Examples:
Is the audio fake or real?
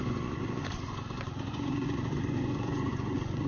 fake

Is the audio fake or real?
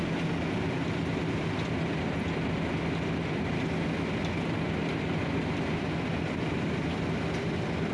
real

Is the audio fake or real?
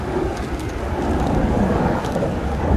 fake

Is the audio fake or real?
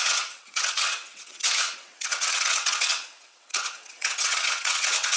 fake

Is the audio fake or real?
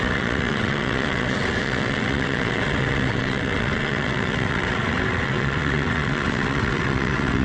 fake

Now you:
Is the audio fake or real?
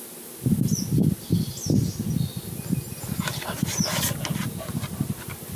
real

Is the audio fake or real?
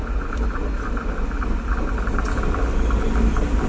real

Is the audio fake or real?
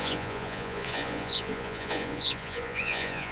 fake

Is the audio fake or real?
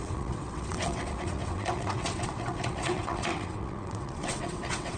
fake